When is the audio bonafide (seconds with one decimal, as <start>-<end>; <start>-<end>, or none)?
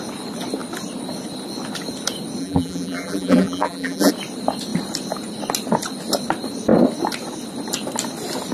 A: 0.0-2.4; 4.1-8.5